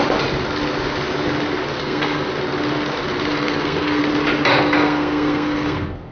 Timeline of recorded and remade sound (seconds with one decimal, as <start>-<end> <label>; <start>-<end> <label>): 0.0-1.8 recorded; 1.8-2.3 remade; 2.3-3.3 recorded; 3.3-4.0 remade; 4.0-4.5 recorded; 4.5-6.1 remade